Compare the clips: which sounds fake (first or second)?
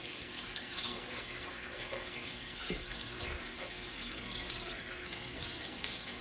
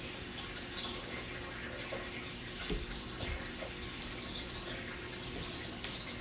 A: first